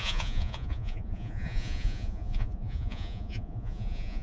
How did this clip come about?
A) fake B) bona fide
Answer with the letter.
A